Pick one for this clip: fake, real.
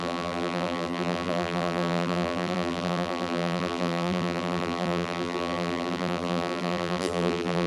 fake